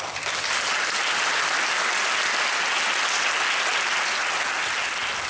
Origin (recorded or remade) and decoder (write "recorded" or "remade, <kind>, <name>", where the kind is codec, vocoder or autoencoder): recorded